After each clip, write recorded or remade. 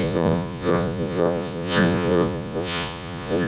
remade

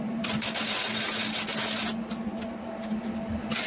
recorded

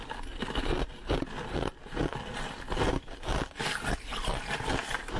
recorded